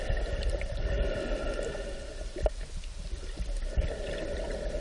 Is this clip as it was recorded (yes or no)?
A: yes